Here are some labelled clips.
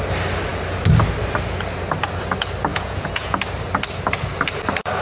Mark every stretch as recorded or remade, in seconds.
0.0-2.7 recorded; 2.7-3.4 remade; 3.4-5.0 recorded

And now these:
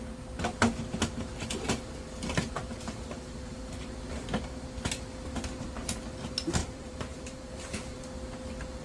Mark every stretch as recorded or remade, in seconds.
0.0-2.7 recorded; 2.7-3.6 remade; 3.6-6.6 recorded; 6.6-8.0 remade; 8.0-8.8 recorded

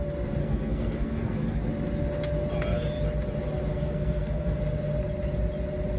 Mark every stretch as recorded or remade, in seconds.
0.0-0.4 recorded; 0.4-1.6 remade; 1.6-3.7 recorded; 3.7-4.6 remade; 4.6-6.0 recorded

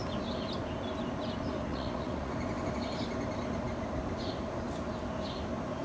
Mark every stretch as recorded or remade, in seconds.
0.0-1.7 recorded; 1.7-2.3 remade; 2.3-5.8 recorded

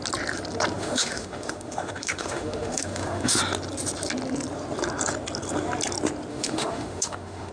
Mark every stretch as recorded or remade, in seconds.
0.0-0.8 recorded; 0.8-3.4 remade; 3.4-6.3 recorded; 6.3-7.5 remade

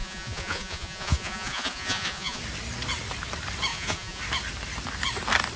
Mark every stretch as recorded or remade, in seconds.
0.0-2.4 remade; 2.4-3.7 recorded; 3.7-4.2 remade; 4.2-5.6 recorded

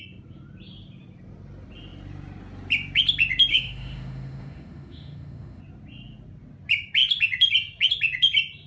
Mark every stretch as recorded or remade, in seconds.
0.0-3.5 recorded; 3.5-5.6 remade; 5.6-8.7 recorded

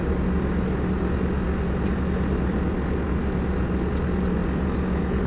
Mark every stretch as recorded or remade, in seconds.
0.0-5.3 recorded